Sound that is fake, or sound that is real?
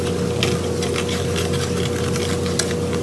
real